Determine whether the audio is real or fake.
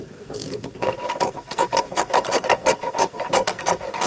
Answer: fake